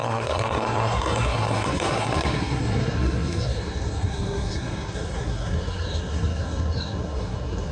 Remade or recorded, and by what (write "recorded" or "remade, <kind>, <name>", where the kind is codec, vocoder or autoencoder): remade, codec, SNAC